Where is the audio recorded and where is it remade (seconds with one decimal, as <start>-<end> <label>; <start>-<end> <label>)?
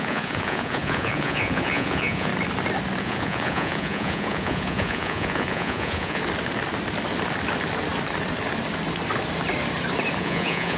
0.0-2.3 remade; 2.3-3.0 recorded; 3.0-6.2 remade; 6.2-10.2 recorded; 10.2-10.8 remade